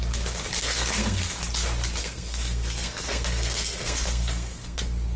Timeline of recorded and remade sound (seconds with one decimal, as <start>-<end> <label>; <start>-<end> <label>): 0.0-0.6 recorded; 0.6-1.4 remade; 1.4-2.0 recorded; 2.0-4.8 remade; 4.8-5.2 recorded